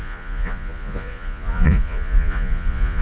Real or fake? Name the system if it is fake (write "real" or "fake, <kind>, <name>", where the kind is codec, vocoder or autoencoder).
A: fake, vocoder, Vocos